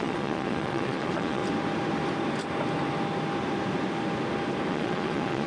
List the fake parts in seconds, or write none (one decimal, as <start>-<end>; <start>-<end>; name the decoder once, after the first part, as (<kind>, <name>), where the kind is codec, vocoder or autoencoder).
0.0-1.4 (vocoder, Vocos); 4.7-5.5